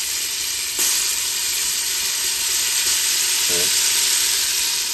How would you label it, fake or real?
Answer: real